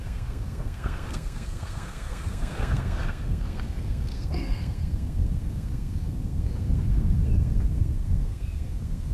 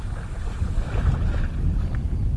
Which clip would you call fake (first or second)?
first